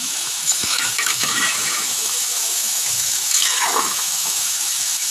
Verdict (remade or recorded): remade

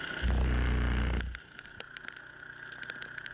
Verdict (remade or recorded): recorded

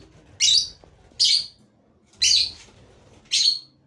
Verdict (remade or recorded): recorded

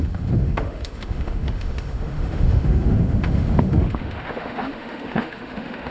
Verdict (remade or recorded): remade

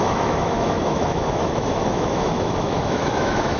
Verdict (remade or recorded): remade